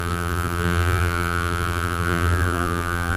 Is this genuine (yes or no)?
no